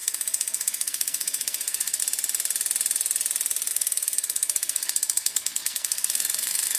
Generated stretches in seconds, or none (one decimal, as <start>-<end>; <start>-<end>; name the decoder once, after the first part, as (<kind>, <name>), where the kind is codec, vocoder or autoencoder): 0.0-2.0 (codec, SNAC); 3.7-6.8